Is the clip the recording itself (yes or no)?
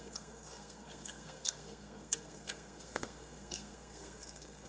no